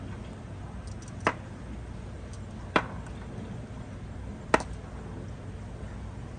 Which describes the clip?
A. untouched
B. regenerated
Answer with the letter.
A